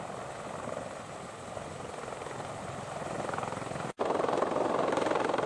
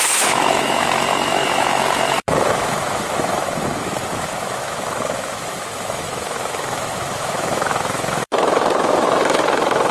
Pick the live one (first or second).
first